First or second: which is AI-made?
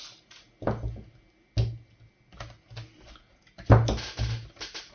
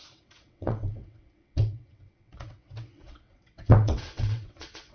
second